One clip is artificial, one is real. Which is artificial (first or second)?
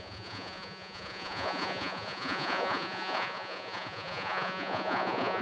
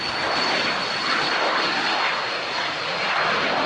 first